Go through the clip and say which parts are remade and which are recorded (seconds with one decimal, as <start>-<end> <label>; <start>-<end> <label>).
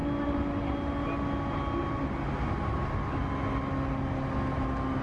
0.0-5.0 recorded